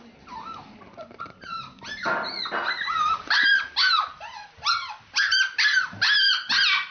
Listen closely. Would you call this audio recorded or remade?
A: recorded